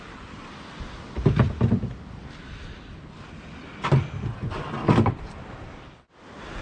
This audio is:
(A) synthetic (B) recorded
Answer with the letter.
B